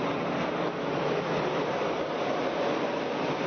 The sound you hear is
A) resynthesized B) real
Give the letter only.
B